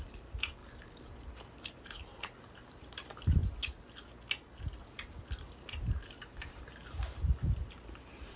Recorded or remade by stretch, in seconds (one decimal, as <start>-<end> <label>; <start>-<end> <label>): 0.0-0.6 remade; 0.6-1.7 recorded; 1.7-3.4 remade; 3.4-5.4 recorded; 5.4-8.4 remade